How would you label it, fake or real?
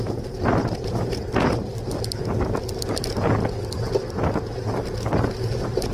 real